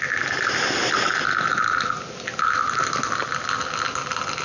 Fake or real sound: real